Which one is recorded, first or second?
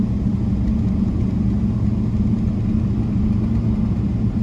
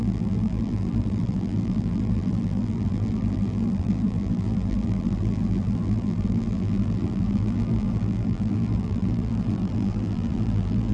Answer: first